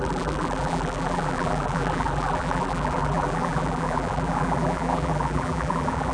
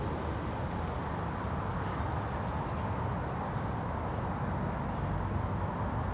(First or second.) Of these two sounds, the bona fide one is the second